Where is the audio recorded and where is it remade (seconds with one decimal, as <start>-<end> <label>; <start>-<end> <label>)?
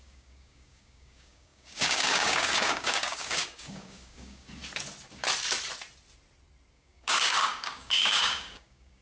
0.0-4.6 remade; 4.6-6.7 recorded; 6.7-9.0 remade